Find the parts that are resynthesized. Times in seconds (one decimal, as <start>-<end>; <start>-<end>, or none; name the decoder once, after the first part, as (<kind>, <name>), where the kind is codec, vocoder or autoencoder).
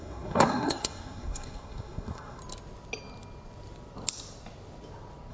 0.0-2.4 (codec, SNAC)